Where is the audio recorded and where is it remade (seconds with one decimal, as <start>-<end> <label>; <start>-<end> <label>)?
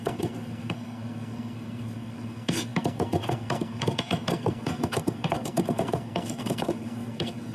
0.0-7.5 remade